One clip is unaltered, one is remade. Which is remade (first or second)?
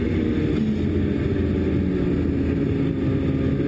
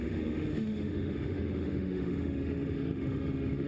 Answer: second